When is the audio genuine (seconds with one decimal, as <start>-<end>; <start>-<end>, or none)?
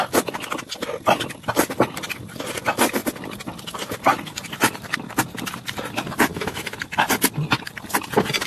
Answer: 0.0-6.3; 6.8-8.5